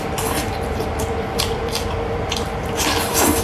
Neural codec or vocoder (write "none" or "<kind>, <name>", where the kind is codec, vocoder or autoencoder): vocoder, BigVGAN v2